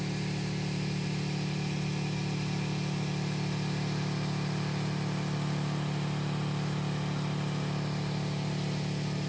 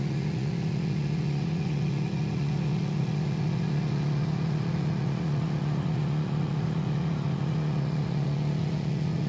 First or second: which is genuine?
first